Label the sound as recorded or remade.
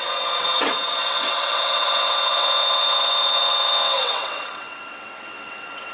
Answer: remade